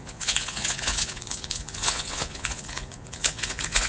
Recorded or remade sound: remade